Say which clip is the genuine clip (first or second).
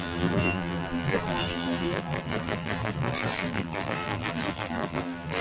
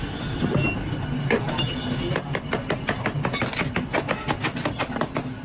second